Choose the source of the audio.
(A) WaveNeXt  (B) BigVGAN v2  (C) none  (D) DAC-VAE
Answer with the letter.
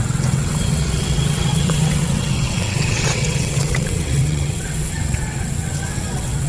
A